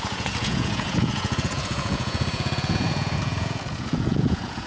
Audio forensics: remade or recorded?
remade